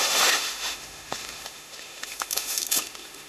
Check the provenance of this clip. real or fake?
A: fake